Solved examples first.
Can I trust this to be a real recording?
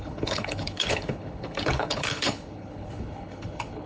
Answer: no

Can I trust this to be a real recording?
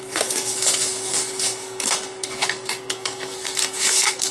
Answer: no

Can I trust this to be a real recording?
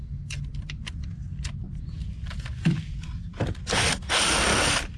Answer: yes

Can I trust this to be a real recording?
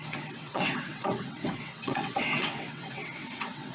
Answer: no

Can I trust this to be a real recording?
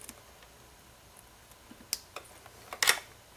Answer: yes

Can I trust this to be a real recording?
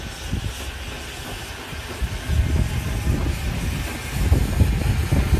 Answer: yes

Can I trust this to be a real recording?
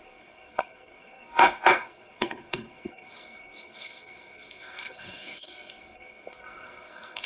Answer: no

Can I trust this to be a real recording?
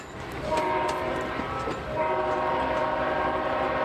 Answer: no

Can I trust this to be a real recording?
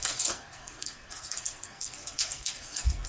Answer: no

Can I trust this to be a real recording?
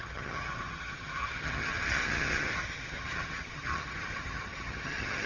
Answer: no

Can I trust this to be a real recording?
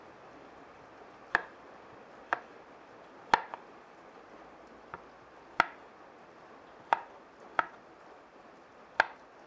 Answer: yes